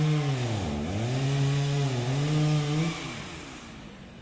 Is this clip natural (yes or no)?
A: yes